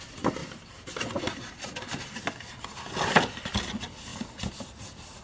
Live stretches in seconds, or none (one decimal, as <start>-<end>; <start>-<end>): 0.0-0.4; 2.2-5.2